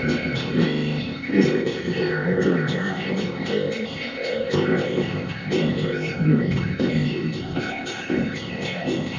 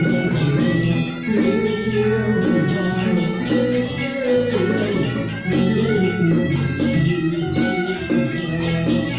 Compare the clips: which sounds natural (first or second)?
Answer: second